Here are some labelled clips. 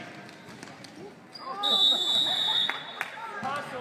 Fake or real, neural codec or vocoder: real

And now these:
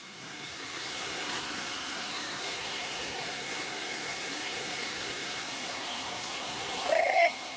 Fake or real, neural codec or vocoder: fake, codec, SNAC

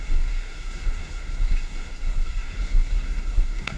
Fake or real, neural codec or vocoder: fake, codec, SNAC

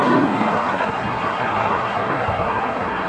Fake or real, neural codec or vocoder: fake, codec, SNAC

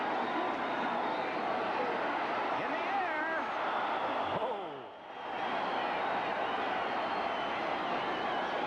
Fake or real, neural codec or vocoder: real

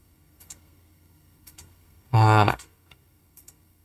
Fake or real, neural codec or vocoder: fake, codec, SNAC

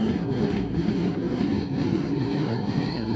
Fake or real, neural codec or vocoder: fake, codec, SNAC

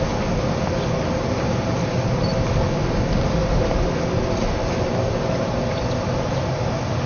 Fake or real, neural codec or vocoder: real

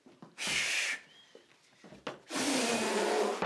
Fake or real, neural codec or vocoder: real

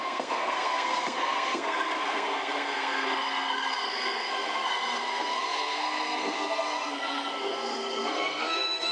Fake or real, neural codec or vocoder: fake, codec, SNAC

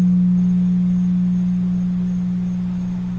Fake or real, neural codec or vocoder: real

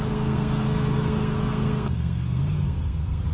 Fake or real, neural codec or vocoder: fake, codec, SNAC